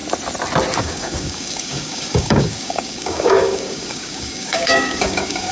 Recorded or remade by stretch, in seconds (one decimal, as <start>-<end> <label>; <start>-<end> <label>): 0.0-0.8 recorded; 0.8-5.5 remade